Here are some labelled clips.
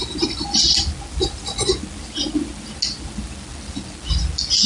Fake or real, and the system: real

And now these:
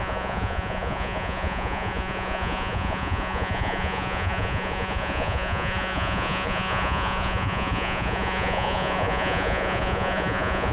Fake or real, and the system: fake, vocoder, Vocos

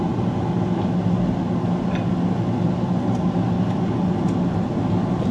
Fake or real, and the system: real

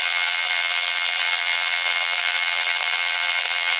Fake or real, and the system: fake, vocoder, BigVGAN v2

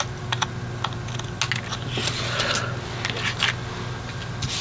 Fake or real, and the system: real